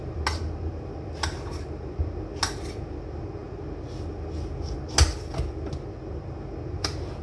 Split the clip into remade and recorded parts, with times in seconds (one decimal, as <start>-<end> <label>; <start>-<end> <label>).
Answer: 0.0-7.2 recorded